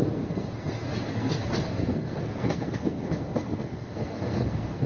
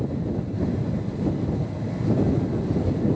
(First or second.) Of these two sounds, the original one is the second